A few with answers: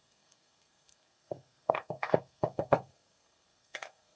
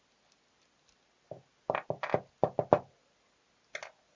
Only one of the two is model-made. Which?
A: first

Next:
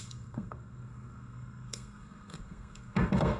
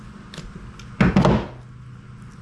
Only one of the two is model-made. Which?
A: first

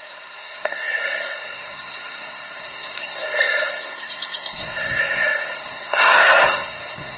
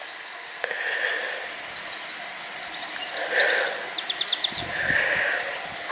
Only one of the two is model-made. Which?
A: first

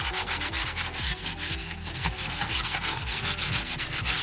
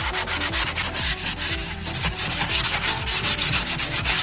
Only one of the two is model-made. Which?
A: first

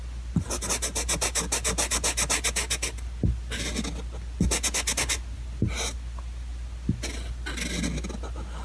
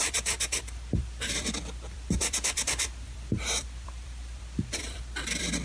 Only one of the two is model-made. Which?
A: second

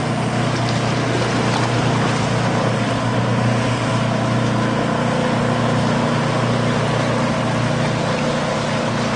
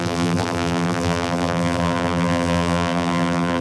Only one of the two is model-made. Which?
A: second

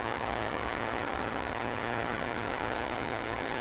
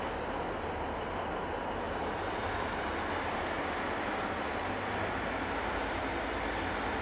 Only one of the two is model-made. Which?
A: first